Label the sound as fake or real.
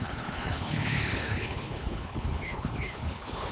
fake